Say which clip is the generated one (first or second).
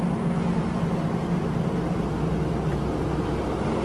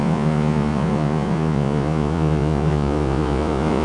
second